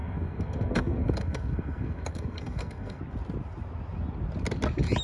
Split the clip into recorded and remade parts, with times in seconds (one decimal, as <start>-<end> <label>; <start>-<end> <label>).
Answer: 0.0-3.0 remade; 3.0-5.0 recorded